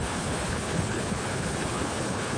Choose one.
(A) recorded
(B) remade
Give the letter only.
B